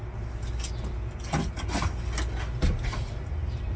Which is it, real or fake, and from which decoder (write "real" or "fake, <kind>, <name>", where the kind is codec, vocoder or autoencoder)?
real